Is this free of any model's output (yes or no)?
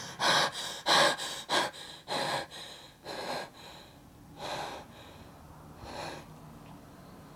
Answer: yes